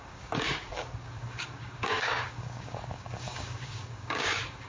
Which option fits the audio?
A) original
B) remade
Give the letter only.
B